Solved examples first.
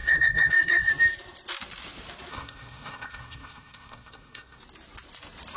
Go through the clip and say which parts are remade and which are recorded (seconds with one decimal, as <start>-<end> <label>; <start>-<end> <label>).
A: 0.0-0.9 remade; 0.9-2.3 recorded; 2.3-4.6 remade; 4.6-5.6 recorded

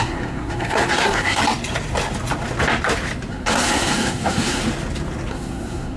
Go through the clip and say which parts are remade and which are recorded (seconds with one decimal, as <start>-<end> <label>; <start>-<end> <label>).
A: 0.0-1.4 remade; 1.4-3.3 recorded; 3.3-4.6 remade; 4.6-5.3 recorded; 5.3-6.0 remade

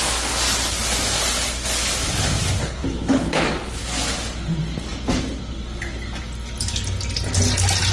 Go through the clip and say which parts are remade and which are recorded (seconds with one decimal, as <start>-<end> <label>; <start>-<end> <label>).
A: 0.0-2.6 recorded; 2.6-3.4 remade; 3.4-7.9 recorded